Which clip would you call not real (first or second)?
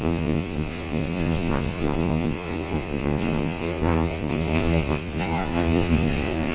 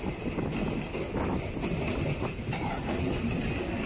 first